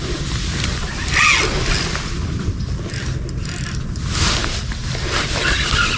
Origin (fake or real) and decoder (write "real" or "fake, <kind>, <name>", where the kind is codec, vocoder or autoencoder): real